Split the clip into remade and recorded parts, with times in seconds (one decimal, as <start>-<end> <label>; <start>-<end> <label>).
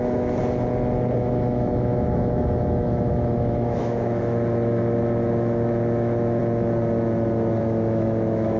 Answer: 0.0-0.4 remade; 0.4-1.2 recorded; 1.2-6.4 remade; 6.4-7.6 recorded; 7.6-8.6 remade